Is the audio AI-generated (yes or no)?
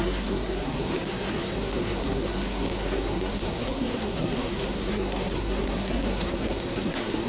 yes